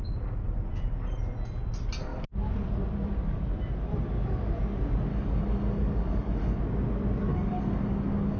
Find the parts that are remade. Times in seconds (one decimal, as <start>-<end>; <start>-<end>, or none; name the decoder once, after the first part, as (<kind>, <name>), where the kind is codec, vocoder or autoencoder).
5.1-6.6 (codec, DAC); 7.3-8.4